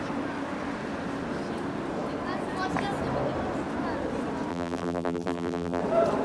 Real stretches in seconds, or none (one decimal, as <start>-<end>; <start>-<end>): 0.0-4.5; 5.8-6.2